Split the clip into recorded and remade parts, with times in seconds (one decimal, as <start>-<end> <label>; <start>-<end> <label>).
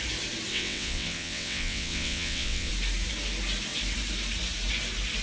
0.0-0.5 recorded; 0.5-2.7 remade; 2.7-5.2 recorded